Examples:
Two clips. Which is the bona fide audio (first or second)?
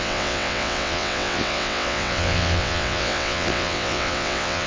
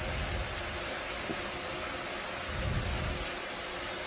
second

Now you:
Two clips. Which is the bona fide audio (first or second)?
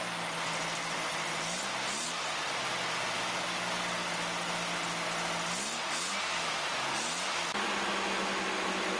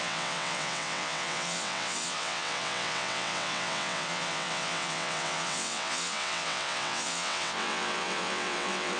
first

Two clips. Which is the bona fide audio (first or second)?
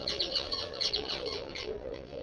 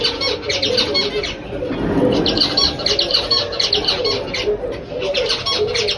second